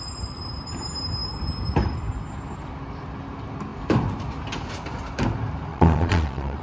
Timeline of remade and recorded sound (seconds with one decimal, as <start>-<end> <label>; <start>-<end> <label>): 0.0-5.7 recorded; 5.7-6.6 remade